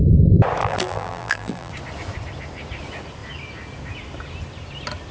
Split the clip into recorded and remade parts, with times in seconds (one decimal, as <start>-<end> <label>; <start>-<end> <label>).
0.0-0.6 recorded; 0.6-1.7 remade; 1.7-5.1 recorded